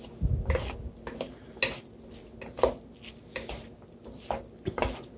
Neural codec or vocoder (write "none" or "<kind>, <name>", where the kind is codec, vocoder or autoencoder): none